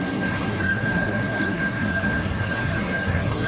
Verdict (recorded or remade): remade